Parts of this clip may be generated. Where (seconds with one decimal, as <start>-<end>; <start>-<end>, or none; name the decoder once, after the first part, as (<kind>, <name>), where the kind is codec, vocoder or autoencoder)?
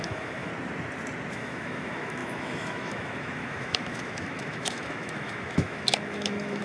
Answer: 0.0-0.5 (autoencoder, DAC-VAE); 1.3-6.6